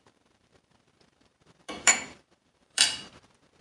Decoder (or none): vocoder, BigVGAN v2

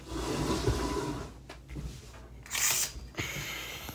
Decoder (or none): none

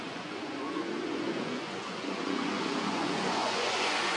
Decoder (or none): vocoder, Vocos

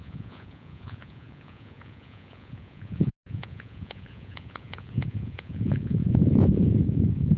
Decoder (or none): vocoder, Vocos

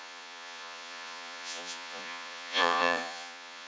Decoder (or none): vocoder, Vocos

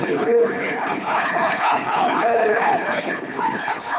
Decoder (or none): codec, HILCodec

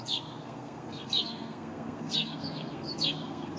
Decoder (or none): codec, SNAC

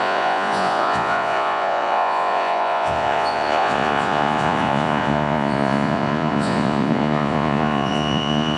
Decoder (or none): vocoder, Vocos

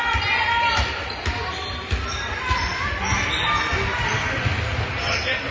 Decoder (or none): none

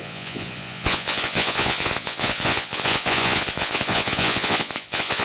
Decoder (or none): vocoder, Vocos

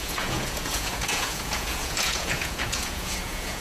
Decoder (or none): vocoder, Vocos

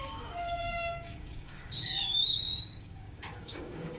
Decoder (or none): codec, DAC